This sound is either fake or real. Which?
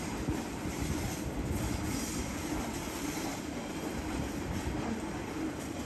fake